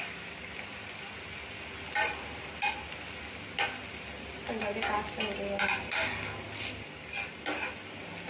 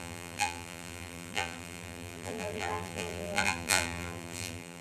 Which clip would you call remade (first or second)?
second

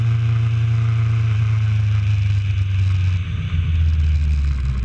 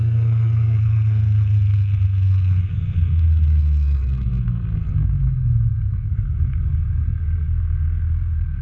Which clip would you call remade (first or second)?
second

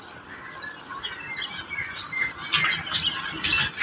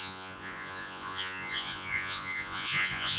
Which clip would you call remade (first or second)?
second